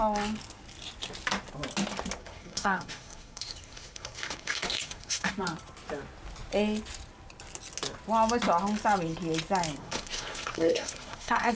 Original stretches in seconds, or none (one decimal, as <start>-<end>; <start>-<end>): 0.0-2.2; 5.3-9.8